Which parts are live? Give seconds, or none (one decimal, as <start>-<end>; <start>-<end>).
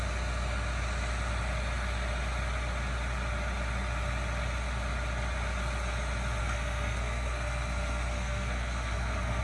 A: 0.0-6.4